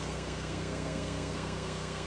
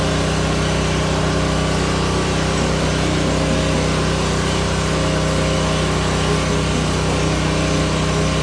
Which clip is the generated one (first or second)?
first